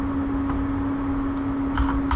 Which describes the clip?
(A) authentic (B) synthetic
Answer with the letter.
A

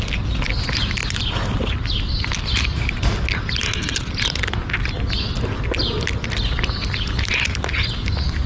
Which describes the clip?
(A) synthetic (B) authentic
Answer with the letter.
B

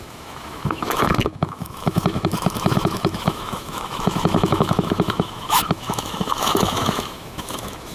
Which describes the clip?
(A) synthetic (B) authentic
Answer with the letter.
A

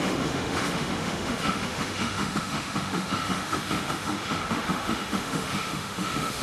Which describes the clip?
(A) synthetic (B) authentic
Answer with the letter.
A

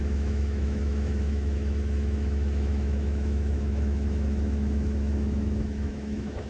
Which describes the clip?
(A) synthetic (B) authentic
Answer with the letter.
A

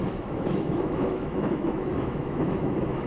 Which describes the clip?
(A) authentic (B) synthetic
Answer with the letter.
B